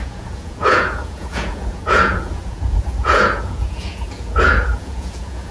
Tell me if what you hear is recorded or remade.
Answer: remade